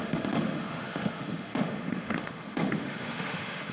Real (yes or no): no